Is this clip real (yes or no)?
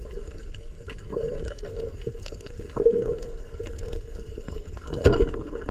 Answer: no